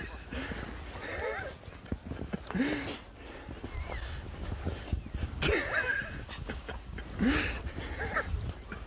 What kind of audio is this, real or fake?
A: real